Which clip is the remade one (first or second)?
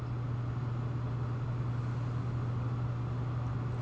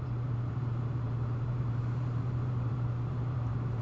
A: second